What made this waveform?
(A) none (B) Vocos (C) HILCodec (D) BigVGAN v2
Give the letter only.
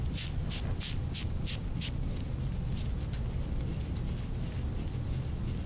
A